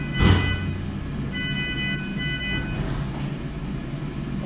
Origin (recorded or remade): recorded